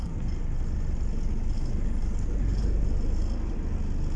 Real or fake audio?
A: real